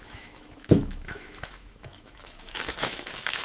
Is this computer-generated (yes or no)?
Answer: yes